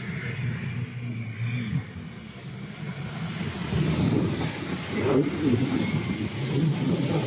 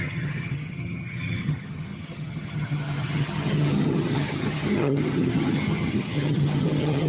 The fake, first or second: second